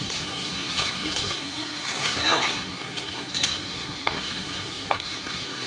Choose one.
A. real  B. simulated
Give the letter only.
B